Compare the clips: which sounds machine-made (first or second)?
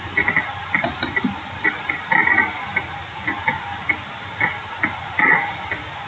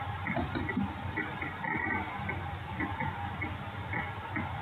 first